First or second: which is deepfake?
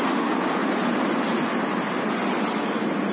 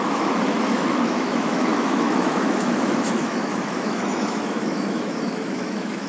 second